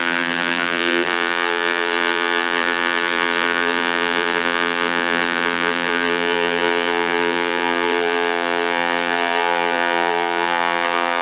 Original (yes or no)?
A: no